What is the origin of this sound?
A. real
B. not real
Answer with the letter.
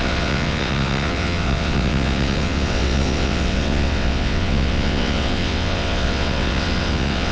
B